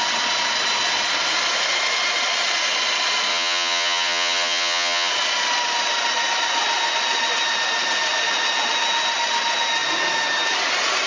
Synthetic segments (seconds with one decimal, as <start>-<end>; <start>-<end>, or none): 3.3-5.1